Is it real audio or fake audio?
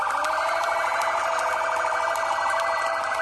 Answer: real